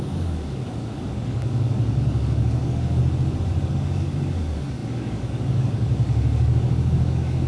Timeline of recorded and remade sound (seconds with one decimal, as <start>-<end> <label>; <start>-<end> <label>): 0.0-3.0 remade; 3.0-3.7 recorded; 3.7-7.5 remade